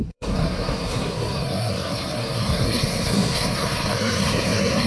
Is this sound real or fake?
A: fake